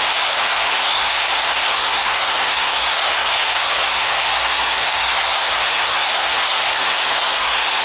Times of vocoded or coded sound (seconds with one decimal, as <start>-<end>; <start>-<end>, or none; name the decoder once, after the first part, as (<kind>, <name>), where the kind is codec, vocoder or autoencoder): 0.0-7.8 (codec, SNAC)